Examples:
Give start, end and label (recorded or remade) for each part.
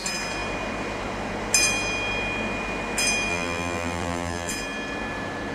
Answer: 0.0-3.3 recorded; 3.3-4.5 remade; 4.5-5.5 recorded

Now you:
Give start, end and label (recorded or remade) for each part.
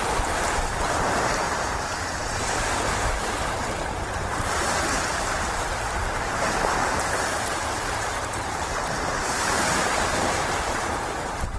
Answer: 0.0-11.6 remade